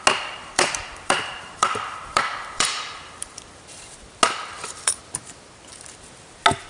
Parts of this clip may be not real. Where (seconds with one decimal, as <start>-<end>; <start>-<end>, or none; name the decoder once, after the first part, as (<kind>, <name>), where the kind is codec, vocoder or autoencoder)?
0.4-3.6 (vocoder, BigVGAN v2); 4.5-5.0